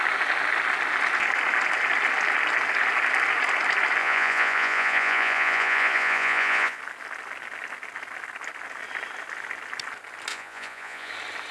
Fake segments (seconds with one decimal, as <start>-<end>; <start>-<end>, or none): 4.0-6.8; 10.3-11.1